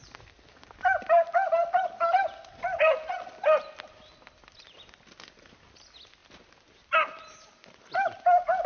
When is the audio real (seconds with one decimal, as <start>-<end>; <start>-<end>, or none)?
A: 0.0-8.7